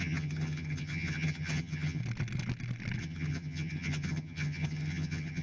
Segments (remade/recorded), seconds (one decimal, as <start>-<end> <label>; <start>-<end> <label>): 0.0-2.0 remade; 2.0-3.0 recorded; 3.0-5.4 remade